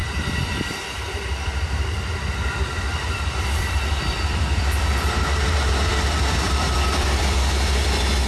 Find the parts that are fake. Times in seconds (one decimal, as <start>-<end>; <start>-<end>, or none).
0.0-4.8; 5.9-7.4